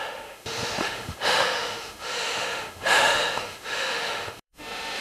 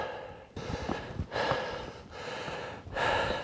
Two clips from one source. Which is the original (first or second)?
second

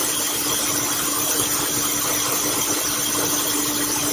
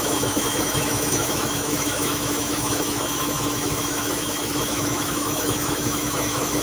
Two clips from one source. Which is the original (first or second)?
first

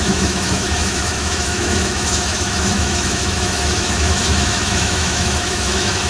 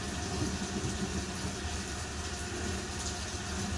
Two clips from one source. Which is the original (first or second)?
second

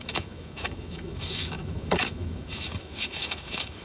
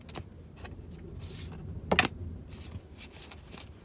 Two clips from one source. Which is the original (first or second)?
second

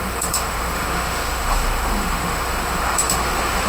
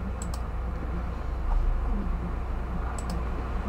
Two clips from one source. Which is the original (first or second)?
second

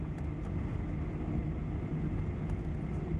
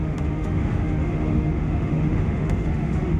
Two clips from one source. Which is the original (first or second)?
first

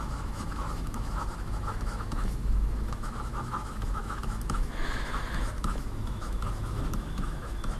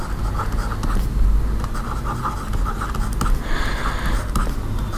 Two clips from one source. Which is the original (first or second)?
second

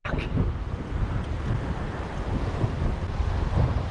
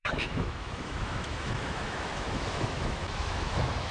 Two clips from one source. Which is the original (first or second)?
first